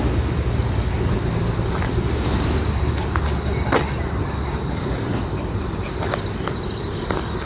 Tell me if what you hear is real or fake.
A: real